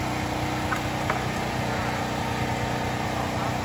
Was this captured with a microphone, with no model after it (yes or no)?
yes